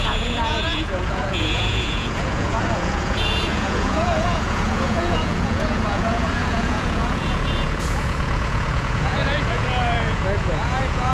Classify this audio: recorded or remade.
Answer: remade